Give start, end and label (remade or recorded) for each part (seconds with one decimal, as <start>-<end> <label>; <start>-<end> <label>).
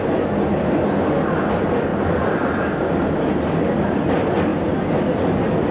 0.0-5.7 recorded